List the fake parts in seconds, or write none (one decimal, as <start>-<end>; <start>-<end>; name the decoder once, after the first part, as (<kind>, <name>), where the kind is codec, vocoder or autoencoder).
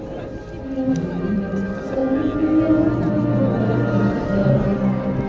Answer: 0.0-0.4 (vocoder, BigVGAN v2); 1.1-2.0; 3.6-5.3